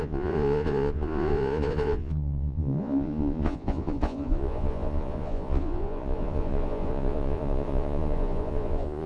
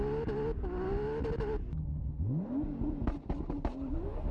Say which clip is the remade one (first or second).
first